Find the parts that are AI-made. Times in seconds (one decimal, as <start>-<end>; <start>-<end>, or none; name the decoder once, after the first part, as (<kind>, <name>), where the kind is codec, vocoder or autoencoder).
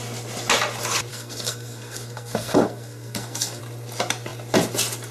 1.1-3.6 (codec, SNAC)